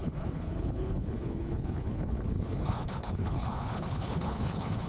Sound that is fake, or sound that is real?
fake